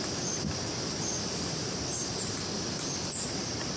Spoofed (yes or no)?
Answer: no